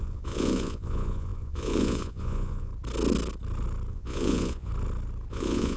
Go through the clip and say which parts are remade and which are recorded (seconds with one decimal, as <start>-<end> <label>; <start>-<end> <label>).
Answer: 0.0-2.7 remade; 2.7-3.9 recorded; 3.9-4.7 remade; 4.7-5.3 recorded; 5.3-5.8 remade